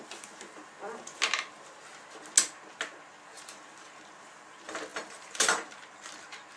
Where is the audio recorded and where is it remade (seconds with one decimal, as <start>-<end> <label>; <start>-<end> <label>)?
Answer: 0.0-4.9 recorded; 4.9-5.8 remade; 5.8-6.6 recorded